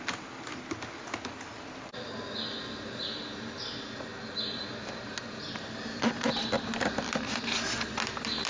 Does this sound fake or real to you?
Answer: real